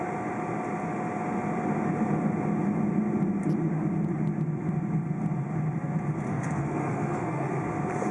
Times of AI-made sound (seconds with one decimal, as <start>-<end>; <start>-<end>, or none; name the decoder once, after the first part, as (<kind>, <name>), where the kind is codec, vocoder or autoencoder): 6.3-7.6 (codec, SNAC)